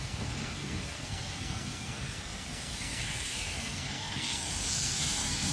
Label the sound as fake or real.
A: fake